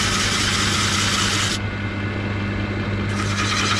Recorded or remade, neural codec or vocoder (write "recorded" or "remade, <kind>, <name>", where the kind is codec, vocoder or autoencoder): recorded